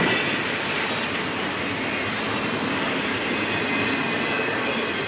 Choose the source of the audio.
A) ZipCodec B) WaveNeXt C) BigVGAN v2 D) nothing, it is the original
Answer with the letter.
D